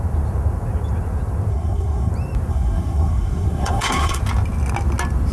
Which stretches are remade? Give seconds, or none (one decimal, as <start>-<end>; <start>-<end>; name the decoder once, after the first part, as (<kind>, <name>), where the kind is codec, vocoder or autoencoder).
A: 1.5-2.1 (codec, SNAC); 2.5-4.2